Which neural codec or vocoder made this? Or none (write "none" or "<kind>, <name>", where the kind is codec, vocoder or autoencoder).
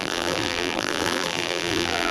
vocoder, BigVGAN v2